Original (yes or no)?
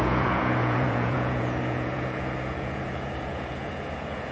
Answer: no